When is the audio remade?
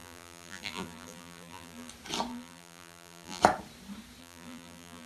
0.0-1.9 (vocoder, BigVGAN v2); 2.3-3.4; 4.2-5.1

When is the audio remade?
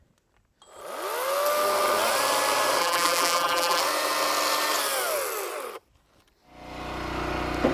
2.8-3.8 (vocoder, BigVGAN v2)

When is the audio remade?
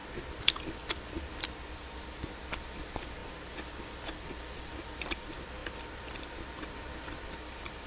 1.7-3.2 (vocoder, BigVGAN v2); 3.8-7.9